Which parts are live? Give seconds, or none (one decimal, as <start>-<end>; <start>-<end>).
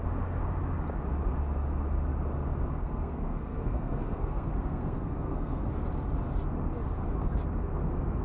0.0-2.8; 5.8-8.2